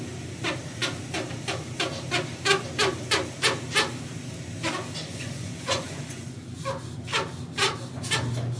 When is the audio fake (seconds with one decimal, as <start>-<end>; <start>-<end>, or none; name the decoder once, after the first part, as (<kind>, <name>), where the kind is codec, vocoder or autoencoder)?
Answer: 5.1-6.4 (vocoder, Vocos)